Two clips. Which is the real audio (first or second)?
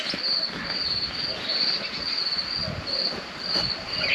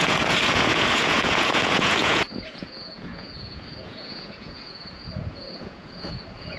first